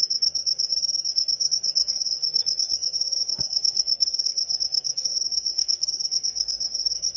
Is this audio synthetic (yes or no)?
yes